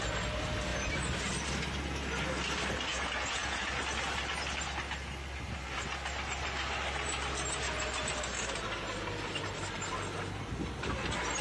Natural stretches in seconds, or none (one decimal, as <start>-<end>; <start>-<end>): 0.0-2.9; 3.7-11.4